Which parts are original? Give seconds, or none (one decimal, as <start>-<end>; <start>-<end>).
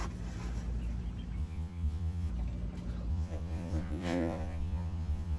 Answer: 0.0-1.4; 2.3-3.1